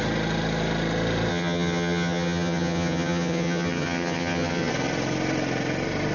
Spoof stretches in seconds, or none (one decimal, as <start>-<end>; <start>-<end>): 1.3-4.7